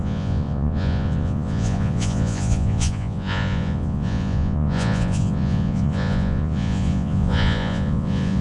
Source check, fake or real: fake